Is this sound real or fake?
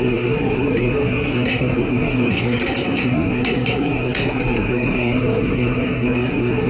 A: fake